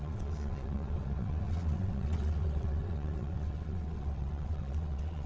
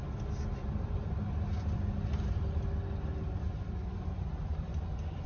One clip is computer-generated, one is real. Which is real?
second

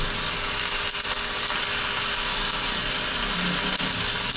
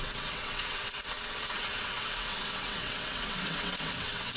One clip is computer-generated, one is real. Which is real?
first